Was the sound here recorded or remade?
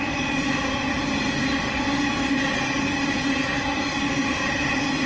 recorded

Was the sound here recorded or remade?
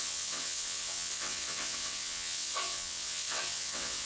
remade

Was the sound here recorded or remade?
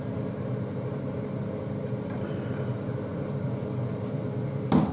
recorded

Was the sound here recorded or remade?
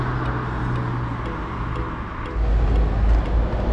recorded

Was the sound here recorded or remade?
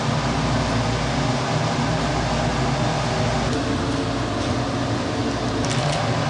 recorded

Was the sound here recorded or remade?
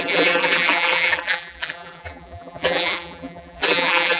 remade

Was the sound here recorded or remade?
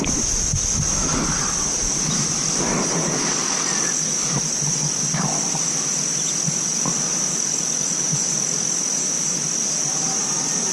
recorded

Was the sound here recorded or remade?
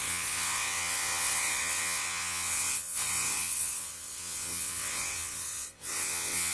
remade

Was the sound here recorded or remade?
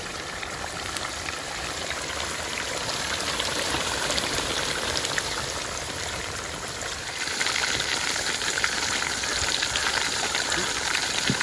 remade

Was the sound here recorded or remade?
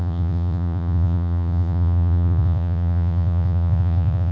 remade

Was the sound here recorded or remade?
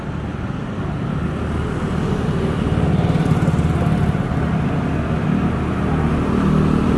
recorded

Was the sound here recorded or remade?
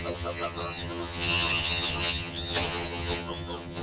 remade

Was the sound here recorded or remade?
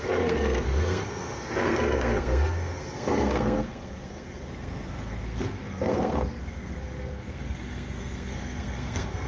remade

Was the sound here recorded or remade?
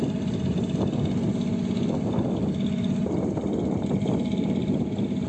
recorded